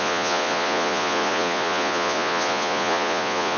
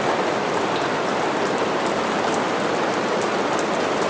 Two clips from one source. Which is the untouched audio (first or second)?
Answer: second